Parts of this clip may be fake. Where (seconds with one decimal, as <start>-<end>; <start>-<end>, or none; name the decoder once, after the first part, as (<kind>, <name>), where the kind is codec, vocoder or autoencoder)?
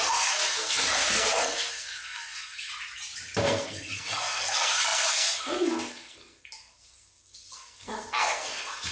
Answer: 0.0-2.7 (codec, SNAC); 3.4-8.9